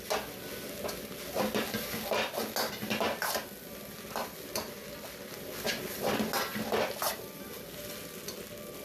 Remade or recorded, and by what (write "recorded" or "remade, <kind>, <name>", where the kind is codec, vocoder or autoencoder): recorded